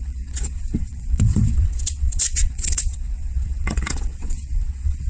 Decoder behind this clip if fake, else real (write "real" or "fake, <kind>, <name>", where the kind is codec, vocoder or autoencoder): fake, vocoder, WaveNeXt